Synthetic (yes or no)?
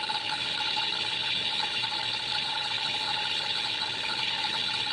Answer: yes